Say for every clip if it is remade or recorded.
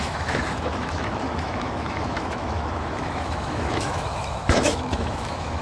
remade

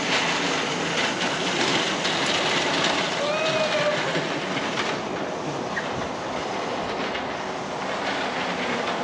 recorded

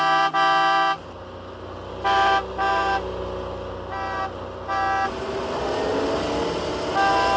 recorded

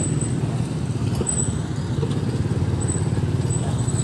recorded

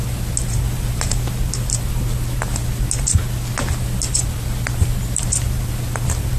recorded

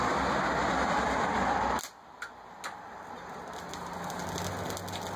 recorded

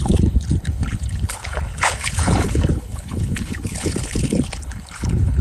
remade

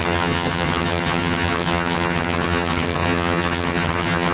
remade